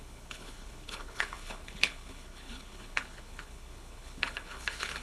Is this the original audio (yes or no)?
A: no